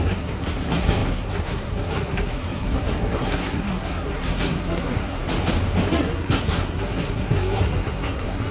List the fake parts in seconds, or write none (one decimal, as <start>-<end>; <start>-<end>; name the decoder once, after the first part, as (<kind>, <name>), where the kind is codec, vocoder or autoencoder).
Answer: 0.0-5.2 (codec, SNAC); 5.9-8.5